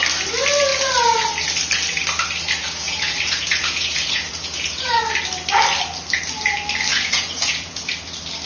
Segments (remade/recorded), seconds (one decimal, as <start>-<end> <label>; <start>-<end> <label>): 0.0-2.6 recorded; 2.6-5.0 remade; 5.0-6.9 recorded; 6.9-7.9 remade; 7.9-8.5 recorded